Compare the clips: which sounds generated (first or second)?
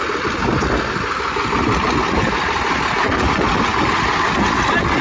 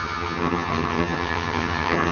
second